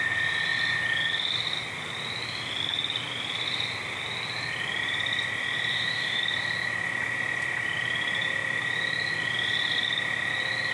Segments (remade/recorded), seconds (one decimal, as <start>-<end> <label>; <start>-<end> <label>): 0.0-5.7 recorded; 5.7-6.2 remade; 6.2-10.7 recorded